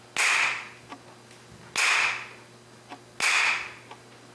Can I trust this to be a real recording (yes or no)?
yes